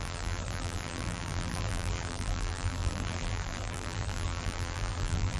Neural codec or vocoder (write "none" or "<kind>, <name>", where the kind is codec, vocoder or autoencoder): vocoder, BigVGAN v2